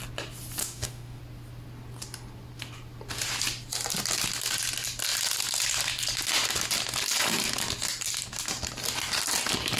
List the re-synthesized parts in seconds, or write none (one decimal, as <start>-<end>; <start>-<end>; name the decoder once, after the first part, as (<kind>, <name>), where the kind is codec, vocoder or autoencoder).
0.6-1.2 (autoencoder, DAC-VAE)